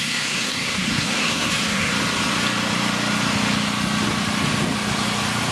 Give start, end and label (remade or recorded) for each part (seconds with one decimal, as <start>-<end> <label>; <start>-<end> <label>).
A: 0.0-1.9 remade; 1.9-5.5 recorded